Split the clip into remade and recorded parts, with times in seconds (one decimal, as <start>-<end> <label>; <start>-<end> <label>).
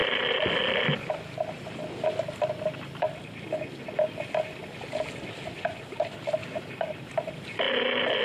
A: 0.0-6.4 recorded; 6.4-7.0 remade; 7.0-8.2 recorded